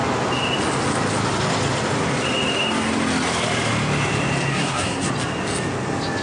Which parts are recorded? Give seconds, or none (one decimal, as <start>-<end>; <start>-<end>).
0.0-4.5; 5.1-6.2